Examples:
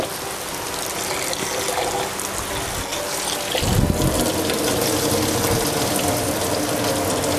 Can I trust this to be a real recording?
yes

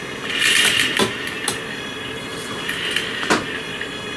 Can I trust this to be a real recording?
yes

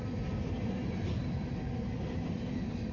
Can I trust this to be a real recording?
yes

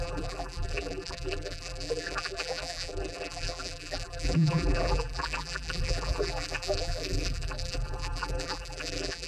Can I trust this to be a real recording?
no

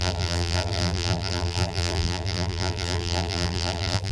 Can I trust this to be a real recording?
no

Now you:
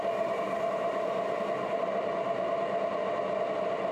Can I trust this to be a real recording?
yes